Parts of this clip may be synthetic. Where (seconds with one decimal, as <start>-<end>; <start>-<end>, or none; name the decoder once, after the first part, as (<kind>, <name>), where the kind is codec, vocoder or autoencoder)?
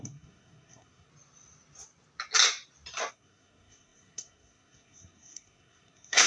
0.0-1.1 (codec, SNAC); 3.1-6.3